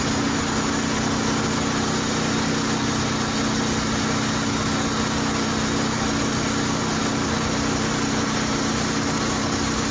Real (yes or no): yes